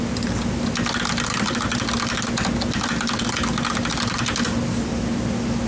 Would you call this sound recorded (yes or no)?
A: yes